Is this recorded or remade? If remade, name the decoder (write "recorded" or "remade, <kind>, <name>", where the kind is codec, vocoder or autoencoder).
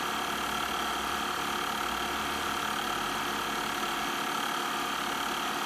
recorded